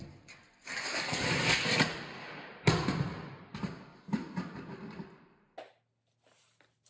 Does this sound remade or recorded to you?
recorded